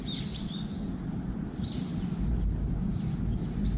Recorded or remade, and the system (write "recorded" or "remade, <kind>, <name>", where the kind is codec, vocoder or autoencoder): recorded